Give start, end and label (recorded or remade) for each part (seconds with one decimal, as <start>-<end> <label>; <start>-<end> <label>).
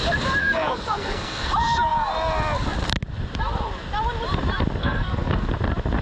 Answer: 0.0-0.4 recorded; 0.4-1.5 remade; 1.5-4.8 recorded; 4.8-5.5 remade; 5.5-6.0 recorded